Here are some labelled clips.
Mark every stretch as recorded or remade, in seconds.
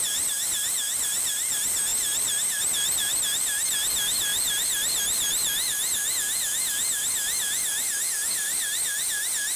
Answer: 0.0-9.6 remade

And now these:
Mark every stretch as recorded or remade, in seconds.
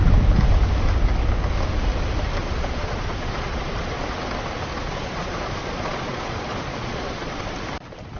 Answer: 0.0-2.4 recorded; 2.4-4.0 remade; 4.0-4.7 recorded; 4.7-7.5 remade; 7.5-8.2 recorded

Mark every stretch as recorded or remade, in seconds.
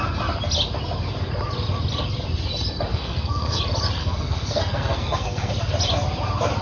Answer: 0.0-2.9 recorded; 2.9-3.6 remade; 3.6-4.0 recorded; 4.0-5.5 remade; 5.5-6.6 recorded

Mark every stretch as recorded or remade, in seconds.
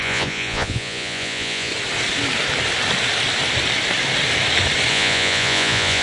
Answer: 0.0-1.7 remade; 1.7-4.9 recorded; 4.9-6.0 remade